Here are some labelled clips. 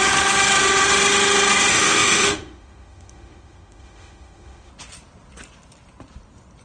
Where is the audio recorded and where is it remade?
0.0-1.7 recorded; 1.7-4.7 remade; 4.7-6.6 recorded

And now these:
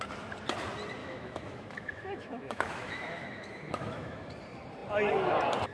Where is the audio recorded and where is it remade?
0.0-1.0 recorded; 1.0-4.3 remade; 4.3-5.7 recorded

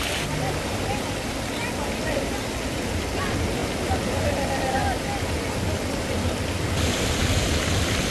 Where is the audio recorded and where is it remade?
0.0-8.1 recorded

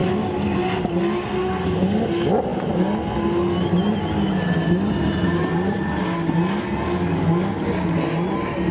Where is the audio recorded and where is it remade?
0.0-8.7 recorded